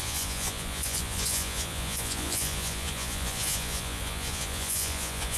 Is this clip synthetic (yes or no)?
yes